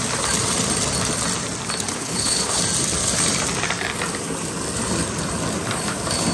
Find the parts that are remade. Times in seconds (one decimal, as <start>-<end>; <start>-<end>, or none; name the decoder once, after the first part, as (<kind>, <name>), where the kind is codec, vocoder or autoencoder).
1.9-2.6 (codec, HILCodec)